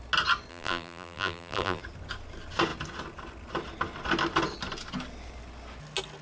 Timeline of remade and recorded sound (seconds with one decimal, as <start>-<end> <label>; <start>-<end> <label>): 0.0-0.5 recorded; 0.5-1.8 remade; 1.8-6.2 recorded